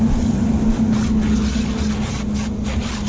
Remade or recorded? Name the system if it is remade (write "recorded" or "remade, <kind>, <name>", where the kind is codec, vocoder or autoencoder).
recorded